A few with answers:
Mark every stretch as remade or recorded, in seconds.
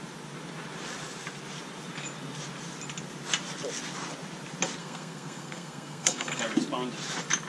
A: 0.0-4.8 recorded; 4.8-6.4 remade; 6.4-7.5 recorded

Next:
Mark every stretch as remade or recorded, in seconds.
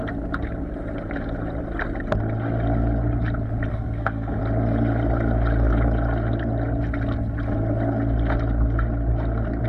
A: 0.0-3.7 recorded; 3.7-4.4 remade; 4.4-9.7 recorded